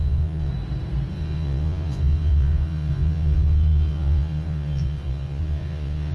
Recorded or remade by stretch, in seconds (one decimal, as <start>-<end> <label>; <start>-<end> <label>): 0.0-0.5 remade; 0.5-1.1 recorded; 1.1-6.1 remade